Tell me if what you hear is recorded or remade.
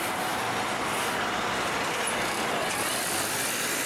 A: recorded